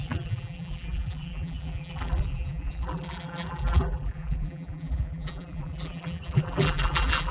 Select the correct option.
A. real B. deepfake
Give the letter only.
B